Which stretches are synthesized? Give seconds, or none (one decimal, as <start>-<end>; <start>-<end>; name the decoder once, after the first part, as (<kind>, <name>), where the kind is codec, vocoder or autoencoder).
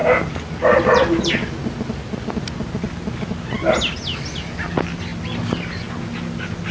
none